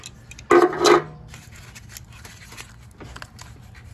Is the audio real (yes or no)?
yes